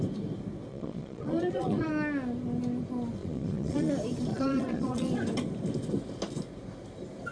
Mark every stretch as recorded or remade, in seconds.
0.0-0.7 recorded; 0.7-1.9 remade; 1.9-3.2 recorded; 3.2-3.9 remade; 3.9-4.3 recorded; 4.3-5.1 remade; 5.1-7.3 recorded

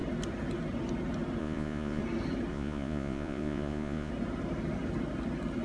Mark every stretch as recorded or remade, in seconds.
0.0-1.4 recorded; 1.4-2.0 remade; 2.0-2.5 recorded; 2.5-4.1 remade; 4.1-5.6 recorded

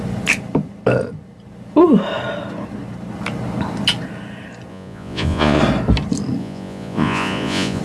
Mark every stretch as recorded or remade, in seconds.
0.0-4.7 recorded; 4.7-5.6 remade; 5.6-6.4 recorded; 6.4-7.8 remade

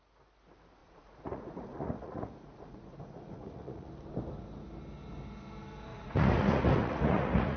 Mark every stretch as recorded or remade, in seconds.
0.0-0.8 recorded; 0.8-3.9 remade; 3.9-5.9 recorded; 5.9-7.6 remade

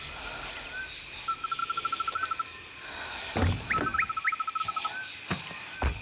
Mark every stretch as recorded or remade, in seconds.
0.0-6.0 recorded

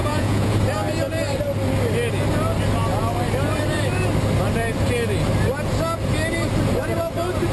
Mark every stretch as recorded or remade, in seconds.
0.0-0.6 remade; 0.6-7.5 recorded

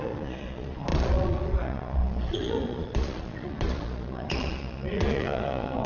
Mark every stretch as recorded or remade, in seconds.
0.0-5.9 remade